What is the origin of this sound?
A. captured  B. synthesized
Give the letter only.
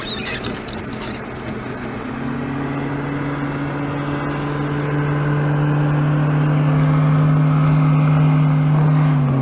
A